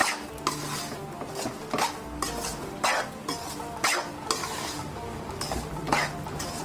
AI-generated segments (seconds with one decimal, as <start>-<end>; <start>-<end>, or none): 4.4-5.7